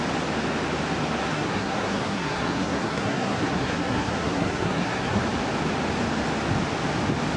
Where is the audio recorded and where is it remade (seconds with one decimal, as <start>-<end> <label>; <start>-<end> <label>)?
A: 0.0-1.2 recorded; 1.2-5.2 remade; 5.2-7.4 recorded